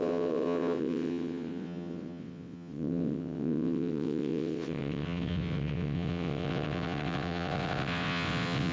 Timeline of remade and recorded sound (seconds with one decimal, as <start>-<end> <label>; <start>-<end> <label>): 0.0-8.7 remade